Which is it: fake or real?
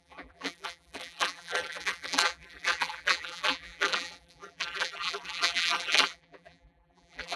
fake